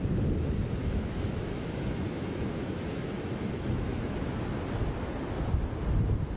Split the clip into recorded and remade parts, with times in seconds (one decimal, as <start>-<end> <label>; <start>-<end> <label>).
0.0-0.8 recorded; 0.8-4.5 remade; 4.5-6.4 recorded